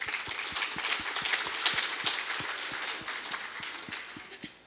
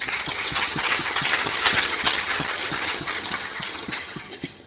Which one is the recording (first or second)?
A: first